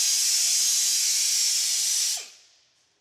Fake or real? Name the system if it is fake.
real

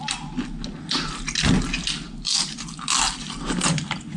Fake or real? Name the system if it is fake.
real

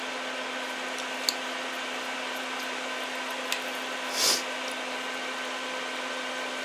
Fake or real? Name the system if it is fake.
real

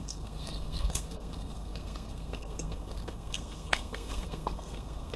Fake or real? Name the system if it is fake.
fake, codec, SNAC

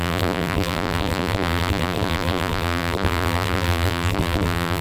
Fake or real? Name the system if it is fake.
fake, vocoder, BigVGAN v2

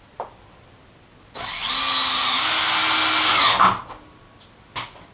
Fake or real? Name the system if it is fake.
real